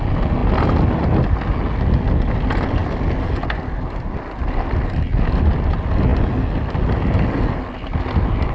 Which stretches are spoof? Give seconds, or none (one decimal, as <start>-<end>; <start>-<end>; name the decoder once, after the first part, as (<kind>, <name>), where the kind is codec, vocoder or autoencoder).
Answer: none